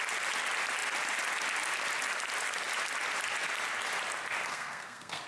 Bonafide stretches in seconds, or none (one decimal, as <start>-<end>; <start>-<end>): 0.0-4.5